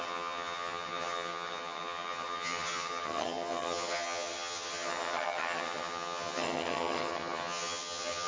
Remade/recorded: remade